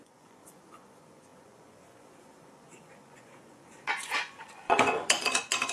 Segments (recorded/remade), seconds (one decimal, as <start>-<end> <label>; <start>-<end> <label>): 0.0-5.7 remade